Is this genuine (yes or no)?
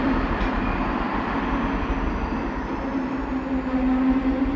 yes